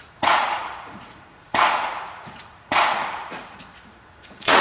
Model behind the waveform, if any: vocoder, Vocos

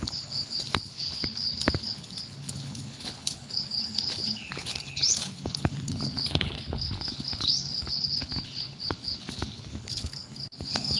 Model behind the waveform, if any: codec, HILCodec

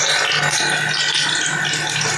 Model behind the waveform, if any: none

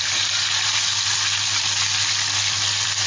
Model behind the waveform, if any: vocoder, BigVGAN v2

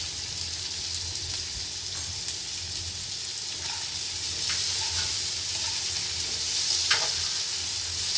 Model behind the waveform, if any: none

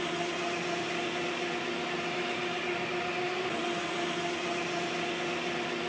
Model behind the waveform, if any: none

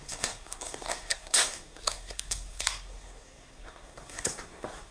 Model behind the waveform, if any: codec, SNAC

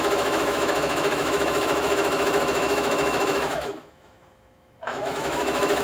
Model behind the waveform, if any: autoencoder, DAC-VAE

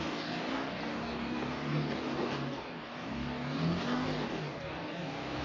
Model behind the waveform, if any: codec, DAC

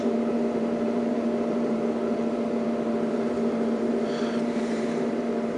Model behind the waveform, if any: vocoder, BigVGAN v2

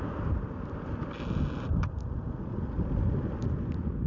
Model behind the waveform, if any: none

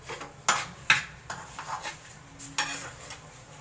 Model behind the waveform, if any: none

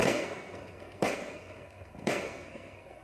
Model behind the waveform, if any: codec, SNAC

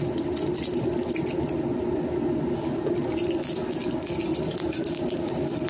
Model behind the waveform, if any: none